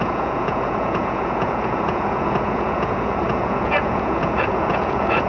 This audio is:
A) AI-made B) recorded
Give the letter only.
A